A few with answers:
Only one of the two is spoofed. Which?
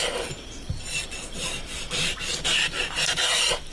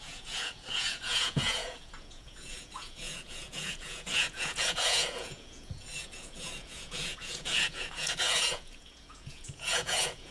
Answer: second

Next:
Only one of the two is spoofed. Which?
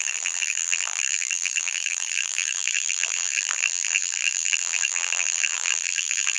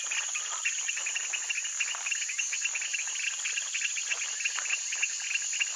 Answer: first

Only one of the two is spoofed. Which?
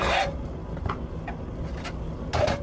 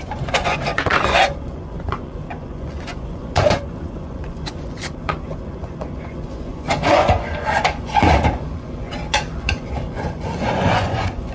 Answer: second